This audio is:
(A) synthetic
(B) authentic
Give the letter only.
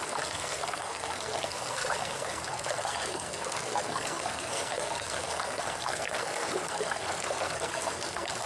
A